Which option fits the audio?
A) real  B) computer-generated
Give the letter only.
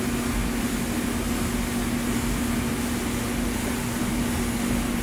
A